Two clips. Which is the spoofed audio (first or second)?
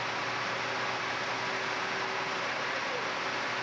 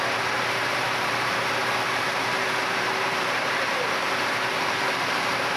second